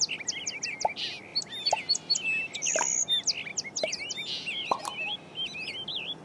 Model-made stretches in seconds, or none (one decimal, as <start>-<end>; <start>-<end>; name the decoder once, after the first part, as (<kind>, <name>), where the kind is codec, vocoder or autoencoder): none